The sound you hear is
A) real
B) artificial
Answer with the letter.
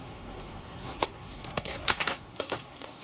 B